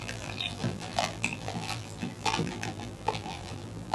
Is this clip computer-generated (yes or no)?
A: yes